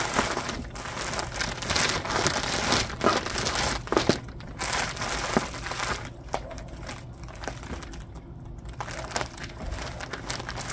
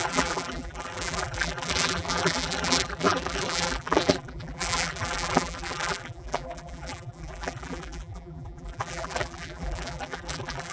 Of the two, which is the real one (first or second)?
first